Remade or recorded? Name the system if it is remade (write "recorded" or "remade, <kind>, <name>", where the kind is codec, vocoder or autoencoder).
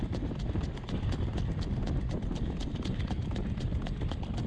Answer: recorded